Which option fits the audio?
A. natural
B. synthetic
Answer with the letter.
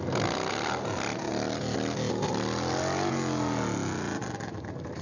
A